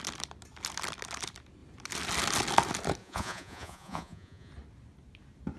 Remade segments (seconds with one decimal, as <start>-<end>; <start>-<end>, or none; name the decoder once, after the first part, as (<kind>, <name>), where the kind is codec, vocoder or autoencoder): 3.0-4.5 (vocoder, Vocos)